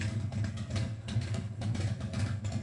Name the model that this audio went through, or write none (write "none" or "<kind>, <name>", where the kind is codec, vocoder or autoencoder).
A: codec, SNAC